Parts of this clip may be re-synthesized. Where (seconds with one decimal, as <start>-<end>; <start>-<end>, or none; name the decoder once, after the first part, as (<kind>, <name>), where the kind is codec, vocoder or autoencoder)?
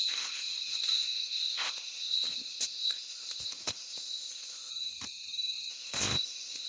0.0-4.7 (codec, ZipCodec); 5.7-6.7